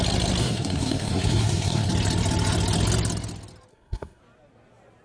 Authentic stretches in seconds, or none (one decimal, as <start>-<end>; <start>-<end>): 0.0-0.4; 1.9-3.7; 4.2-5.0